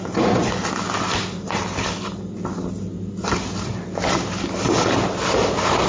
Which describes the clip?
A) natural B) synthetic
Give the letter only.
A